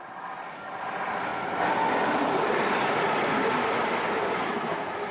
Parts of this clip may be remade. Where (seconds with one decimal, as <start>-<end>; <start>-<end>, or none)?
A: none